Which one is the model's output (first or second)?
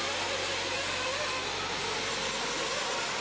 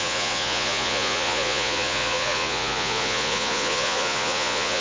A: second